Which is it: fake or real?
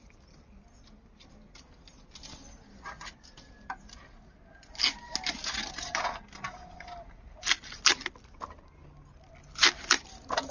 real